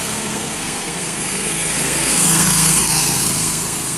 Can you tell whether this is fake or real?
fake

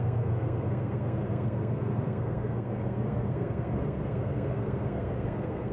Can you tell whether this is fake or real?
fake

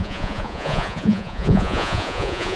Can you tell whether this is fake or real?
fake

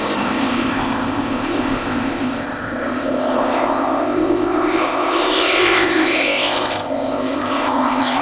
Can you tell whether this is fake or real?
fake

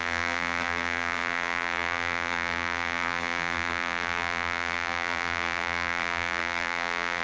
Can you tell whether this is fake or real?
fake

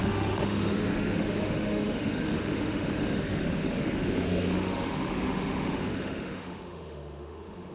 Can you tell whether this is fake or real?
fake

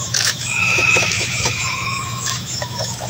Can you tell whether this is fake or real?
fake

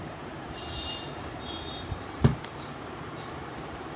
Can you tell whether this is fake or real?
fake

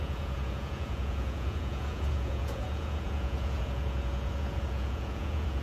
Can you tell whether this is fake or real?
fake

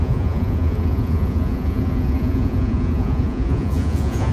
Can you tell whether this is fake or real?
fake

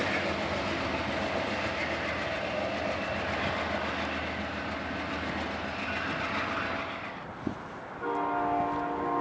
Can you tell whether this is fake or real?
real